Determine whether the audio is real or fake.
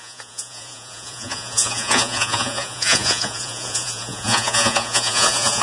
fake